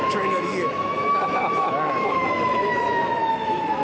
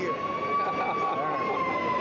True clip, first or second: second